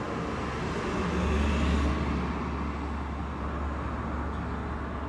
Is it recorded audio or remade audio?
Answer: recorded